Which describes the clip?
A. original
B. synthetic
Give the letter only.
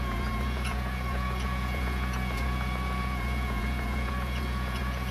B